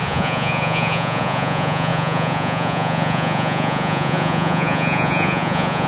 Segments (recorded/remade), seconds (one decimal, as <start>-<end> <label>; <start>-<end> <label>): 0.0-5.9 remade